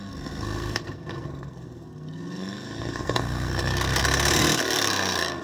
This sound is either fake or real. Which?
fake